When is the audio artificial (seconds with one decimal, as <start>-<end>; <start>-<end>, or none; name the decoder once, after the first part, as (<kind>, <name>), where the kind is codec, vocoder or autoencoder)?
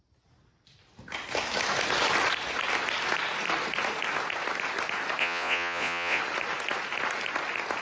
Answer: 5.2-6.2 (vocoder, Vocos)